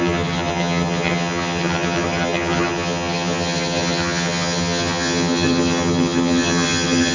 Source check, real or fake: fake